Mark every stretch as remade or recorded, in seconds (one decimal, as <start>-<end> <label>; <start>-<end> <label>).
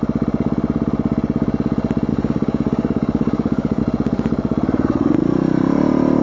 0.0-2.1 recorded; 2.1-3.8 remade; 3.8-6.2 recorded